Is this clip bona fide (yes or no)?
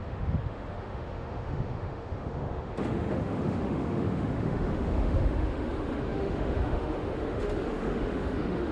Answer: no